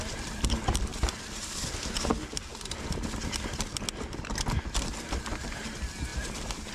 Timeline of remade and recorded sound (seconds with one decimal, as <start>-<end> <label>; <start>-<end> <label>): 0.0-6.7 recorded